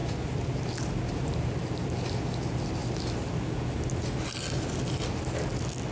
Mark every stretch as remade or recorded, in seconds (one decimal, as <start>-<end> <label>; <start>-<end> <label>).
0.0-5.9 recorded